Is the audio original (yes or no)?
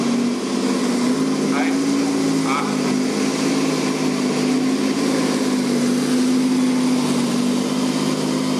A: yes